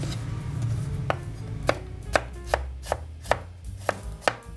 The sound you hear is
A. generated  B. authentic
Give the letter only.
B